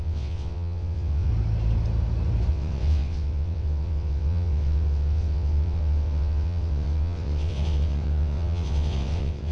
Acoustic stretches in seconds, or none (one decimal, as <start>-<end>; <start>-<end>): 1.3-2.5